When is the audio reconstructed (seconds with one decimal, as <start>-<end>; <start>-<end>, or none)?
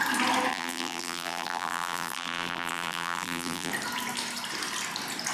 0.5-3.7